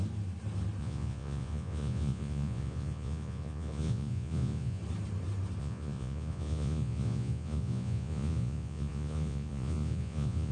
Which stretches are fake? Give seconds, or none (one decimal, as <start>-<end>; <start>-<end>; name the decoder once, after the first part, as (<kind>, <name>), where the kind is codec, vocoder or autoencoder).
0.8-4.8 (vocoder, Vocos); 5.6-10.5